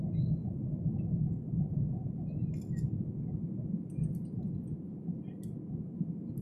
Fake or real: real